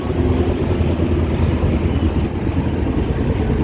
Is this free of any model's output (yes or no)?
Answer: yes